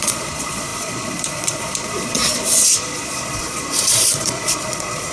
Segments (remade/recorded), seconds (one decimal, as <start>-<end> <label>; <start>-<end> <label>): 0.0-5.1 remade